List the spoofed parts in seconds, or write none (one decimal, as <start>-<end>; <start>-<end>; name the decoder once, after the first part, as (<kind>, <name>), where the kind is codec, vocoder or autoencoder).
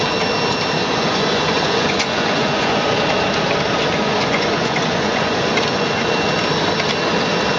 0.8-3.0 (vocoder, Vocos); 4.0-6.1